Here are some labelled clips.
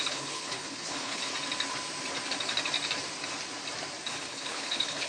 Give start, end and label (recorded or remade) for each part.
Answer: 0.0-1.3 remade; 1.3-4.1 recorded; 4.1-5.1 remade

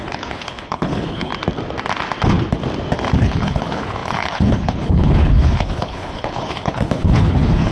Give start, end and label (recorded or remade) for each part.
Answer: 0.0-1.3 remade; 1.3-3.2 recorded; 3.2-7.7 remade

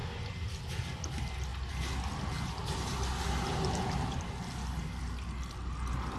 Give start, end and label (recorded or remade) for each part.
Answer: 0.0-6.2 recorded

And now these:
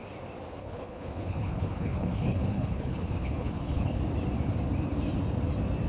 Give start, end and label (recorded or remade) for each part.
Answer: 0.0-0.6 recorded; 0.6-4.0 remade; 4.0-5.9 recorded

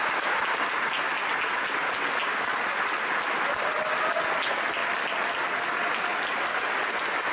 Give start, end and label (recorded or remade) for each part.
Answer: 0.0-7.3 recorded